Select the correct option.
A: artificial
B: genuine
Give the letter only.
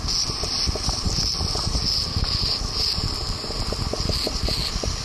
B